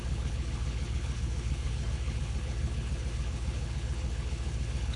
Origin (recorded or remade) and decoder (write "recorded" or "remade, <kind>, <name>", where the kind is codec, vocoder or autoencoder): remade, codec, HILCodec